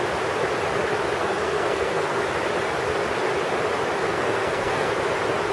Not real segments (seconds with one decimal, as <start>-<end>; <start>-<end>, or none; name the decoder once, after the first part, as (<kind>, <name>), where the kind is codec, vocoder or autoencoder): 1.2-2.2 (codec, SNAC); 4.0-4.9